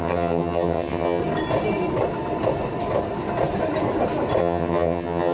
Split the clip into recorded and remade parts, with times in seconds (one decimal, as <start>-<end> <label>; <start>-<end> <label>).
0.0-1.2 remade; 1.2-4.4 recorded; 4.4-5.3 remade